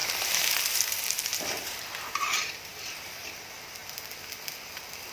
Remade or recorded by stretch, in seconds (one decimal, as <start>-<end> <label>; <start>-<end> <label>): 0.0-3.1 remade; 3.1-5.1 recorded